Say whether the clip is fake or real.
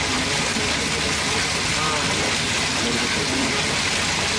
real